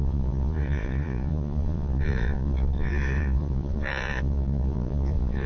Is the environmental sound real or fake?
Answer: fake